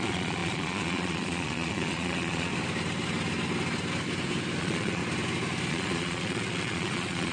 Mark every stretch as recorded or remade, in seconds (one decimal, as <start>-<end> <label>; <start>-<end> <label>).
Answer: 0.0-2.5 remade; 2.5-4.6 recorded; 4.6-5.0 remade; 5.0-5.7 recorded; 5.7-7.3 remade